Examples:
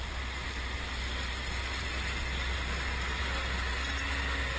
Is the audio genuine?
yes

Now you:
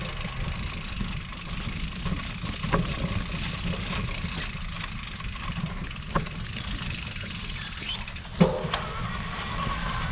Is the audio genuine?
yes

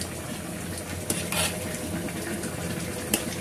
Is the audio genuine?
yes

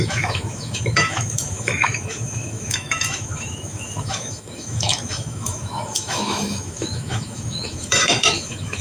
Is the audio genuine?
no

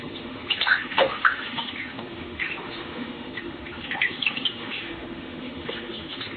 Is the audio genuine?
no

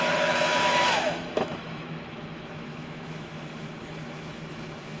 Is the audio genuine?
no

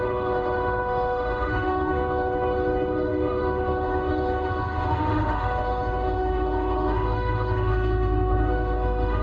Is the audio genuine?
no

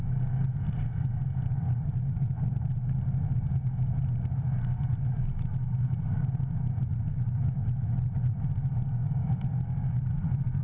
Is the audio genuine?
yes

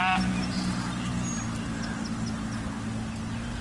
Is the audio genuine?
yes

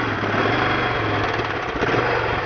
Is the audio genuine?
yes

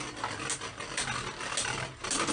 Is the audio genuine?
yes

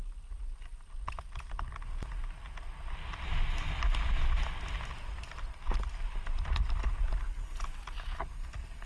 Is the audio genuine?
yes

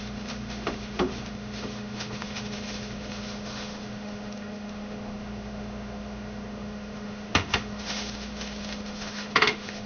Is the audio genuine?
no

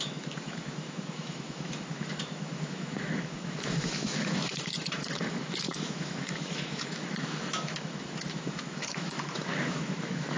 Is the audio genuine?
no